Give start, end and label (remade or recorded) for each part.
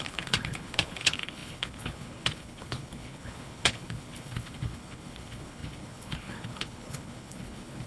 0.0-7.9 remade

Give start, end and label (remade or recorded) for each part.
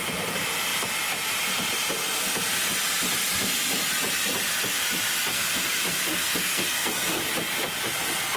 0.0-5.3 recorded; 5.3-7.2 remade; 7.2-8.4 recorded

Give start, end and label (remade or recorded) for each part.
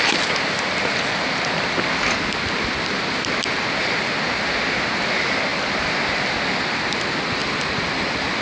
0.0-7.4 recorded; 7.4-8.4 remade